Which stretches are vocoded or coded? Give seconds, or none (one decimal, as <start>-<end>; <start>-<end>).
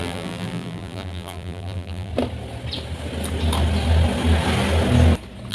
0.0-2.1